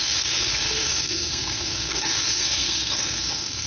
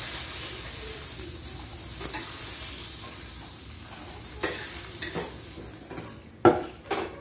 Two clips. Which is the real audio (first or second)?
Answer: second